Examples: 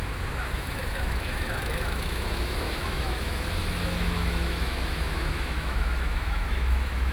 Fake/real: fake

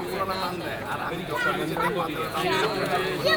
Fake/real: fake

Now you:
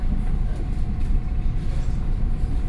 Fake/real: real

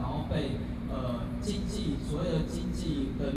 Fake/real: fake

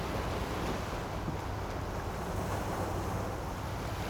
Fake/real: real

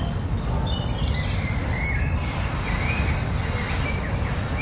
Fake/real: real